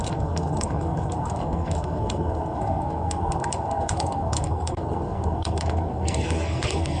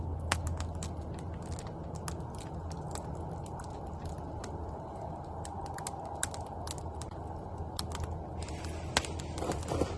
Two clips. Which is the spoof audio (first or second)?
first